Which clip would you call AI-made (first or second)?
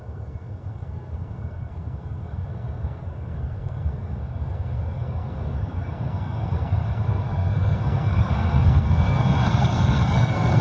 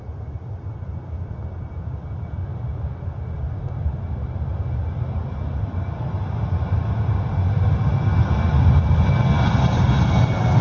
first